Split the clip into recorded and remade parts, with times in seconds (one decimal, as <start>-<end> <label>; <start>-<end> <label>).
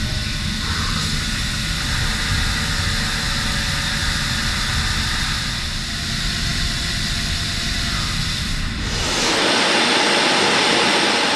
0.0-11.4 recorded